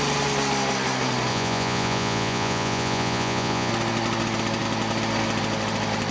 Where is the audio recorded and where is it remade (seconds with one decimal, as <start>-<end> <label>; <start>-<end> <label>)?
0.0-1.3 recorded; 1.3-3.7 remade; 3.7-6.1 recorded